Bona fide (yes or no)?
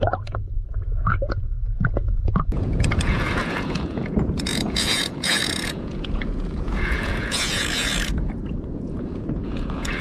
no